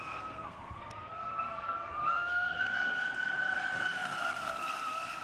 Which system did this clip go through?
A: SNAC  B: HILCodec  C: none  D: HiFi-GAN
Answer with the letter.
A